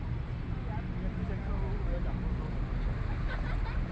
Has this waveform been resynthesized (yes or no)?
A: no